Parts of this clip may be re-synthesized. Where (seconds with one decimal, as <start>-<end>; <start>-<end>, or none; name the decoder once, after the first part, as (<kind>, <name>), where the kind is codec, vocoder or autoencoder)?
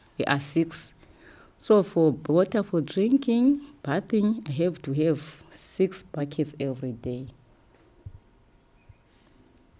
none